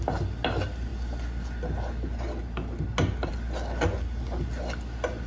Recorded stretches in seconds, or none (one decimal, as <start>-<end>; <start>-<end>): 0.0-5.3